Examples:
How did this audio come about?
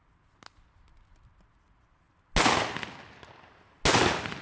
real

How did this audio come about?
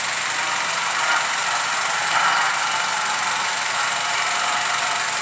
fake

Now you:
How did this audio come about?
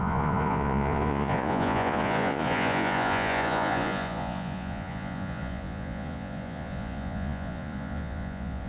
fake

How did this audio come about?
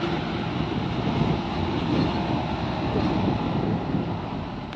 real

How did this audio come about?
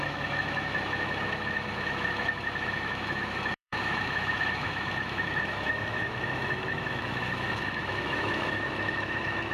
fake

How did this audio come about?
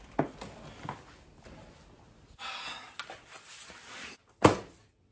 real